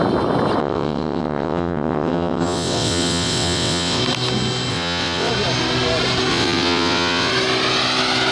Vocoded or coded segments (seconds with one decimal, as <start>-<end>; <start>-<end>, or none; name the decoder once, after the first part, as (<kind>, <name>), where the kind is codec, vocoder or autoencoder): 0.6-4.0 (vocoder, WaveNeXt); 4.7-5.3; 6.3-7.3